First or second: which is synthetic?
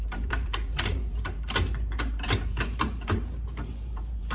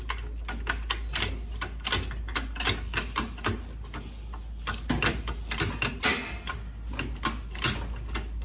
first